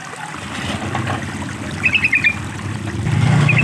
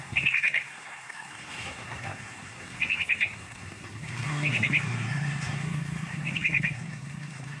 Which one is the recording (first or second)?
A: first